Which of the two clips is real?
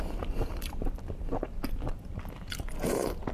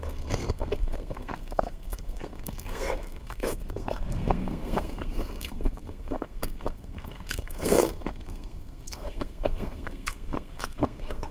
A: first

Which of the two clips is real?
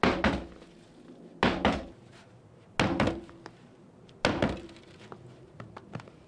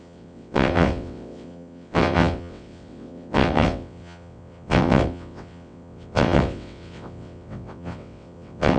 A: first